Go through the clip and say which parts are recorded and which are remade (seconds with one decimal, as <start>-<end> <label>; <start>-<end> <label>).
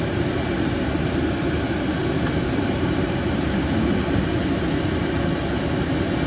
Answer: 0.0-2.4 recorded; 2.4-3.6 remade; 3.6-6.3 recorded